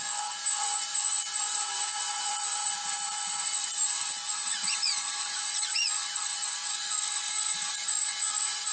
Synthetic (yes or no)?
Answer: yes